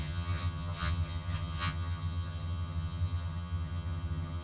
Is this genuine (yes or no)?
no